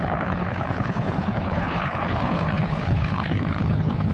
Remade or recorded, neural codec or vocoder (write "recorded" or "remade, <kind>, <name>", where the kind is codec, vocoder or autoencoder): remade, codec, HILCodec